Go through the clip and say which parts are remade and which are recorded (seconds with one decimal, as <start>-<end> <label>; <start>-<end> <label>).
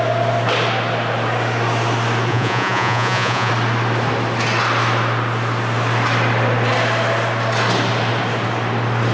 0.0-2.3 recorded; 2.3-3.5 remade; 3.5-9.1 recorded